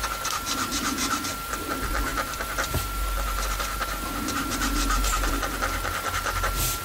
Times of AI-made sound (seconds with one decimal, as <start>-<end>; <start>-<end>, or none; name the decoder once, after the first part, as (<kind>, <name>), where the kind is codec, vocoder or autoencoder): 0.7-1.7 (vocoder, BigVGAN v2); 2.1-5.3